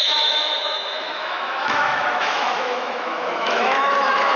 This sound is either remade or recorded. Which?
remade